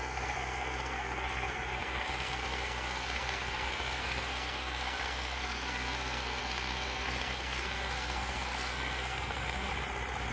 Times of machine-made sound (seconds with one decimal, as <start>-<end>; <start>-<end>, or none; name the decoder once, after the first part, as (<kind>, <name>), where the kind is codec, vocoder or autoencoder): 0.0-9.7 (codec, SNAC)